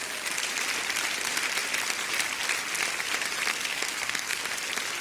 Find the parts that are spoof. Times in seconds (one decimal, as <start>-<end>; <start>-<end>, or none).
3.5-4.4